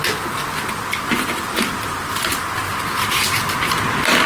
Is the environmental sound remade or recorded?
recorded